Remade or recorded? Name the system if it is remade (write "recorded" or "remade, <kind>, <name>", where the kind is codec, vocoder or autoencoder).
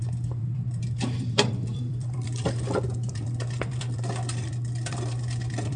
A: remade, vocoder, BigVGAN v2